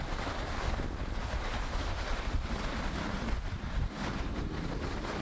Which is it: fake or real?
real